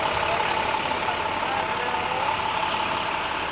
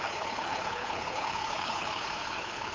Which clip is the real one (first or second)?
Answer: first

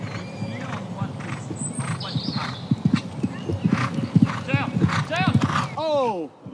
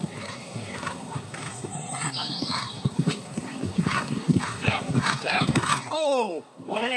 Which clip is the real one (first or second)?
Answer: first